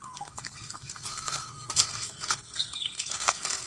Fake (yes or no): yes